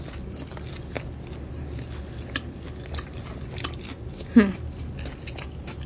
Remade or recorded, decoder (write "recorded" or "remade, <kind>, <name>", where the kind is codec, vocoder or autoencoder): recorded